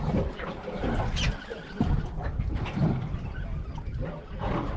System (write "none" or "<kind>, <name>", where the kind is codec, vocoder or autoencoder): none